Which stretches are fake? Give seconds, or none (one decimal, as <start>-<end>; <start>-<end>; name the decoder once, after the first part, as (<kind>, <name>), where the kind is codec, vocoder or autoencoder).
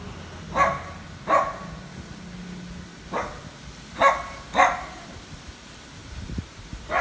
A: 6.0-6.6 (vocoder, BigVGAN v2)